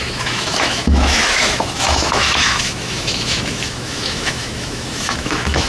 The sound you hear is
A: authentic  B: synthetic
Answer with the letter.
B